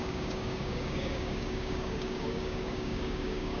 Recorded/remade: remade